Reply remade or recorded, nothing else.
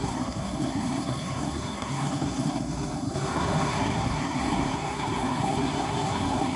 remade